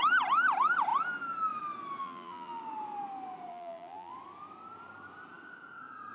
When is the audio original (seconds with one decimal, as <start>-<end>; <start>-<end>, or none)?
0.0-2.0; 2.6-3.5; 4.1-6.1